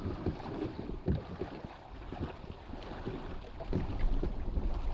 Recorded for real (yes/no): yes